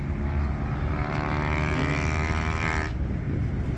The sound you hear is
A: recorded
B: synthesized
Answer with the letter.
A